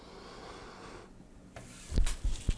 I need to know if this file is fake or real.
real